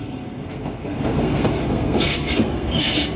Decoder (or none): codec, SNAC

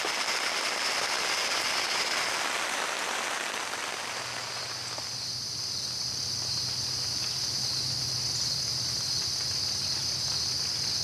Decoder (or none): none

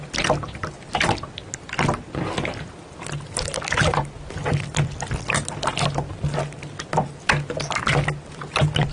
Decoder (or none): none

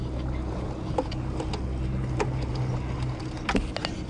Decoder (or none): none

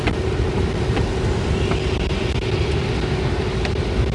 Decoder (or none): none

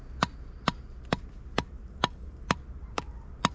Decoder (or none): none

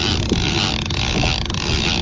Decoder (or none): none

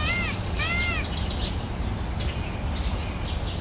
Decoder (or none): none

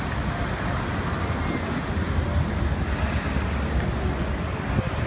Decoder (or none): none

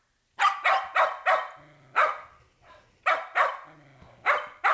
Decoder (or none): none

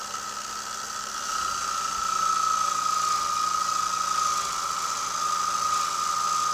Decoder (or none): none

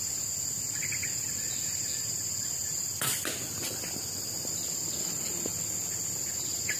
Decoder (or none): none